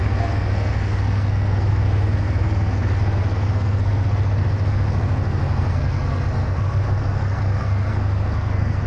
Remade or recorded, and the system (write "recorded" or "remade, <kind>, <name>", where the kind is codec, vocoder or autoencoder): remade, codec, SNAC